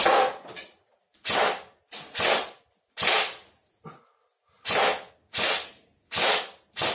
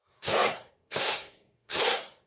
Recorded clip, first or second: first